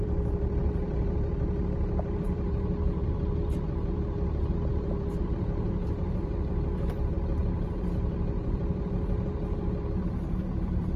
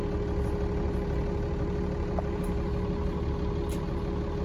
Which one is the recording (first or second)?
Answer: second